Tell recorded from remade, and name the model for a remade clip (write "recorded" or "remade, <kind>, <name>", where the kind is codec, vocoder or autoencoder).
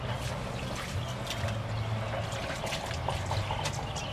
recorded